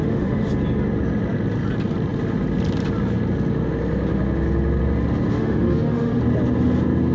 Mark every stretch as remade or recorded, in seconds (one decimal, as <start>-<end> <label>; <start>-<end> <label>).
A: 0.0-0.5 remade; 0.5-5.3 recorded; 5.3-6.2 remade; 6.2-7.1 recorded